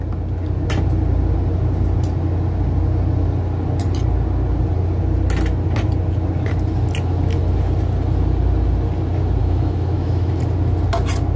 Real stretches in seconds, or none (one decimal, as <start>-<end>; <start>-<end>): 0.0-9.4; 10.4-11.4